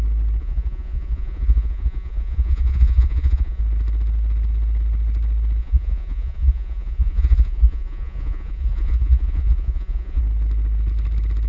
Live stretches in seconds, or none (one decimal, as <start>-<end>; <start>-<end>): 0.0-0.4; 3.6-5.6; 10.2-11.5